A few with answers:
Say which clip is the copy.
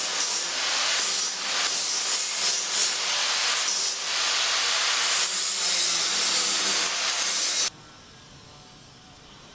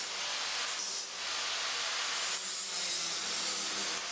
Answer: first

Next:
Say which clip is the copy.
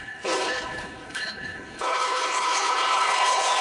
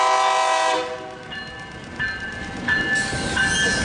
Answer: first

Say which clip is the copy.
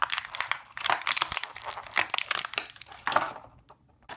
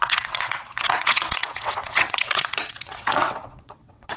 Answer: second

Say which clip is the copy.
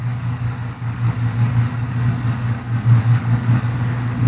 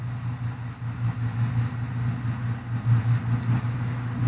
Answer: first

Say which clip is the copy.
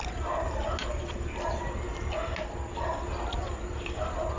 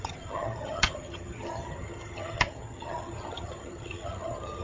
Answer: second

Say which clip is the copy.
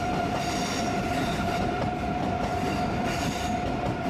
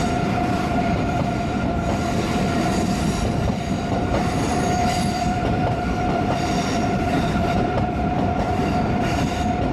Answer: second